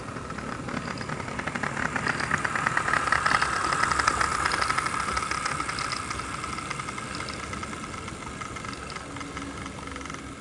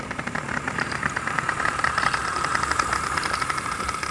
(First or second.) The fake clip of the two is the second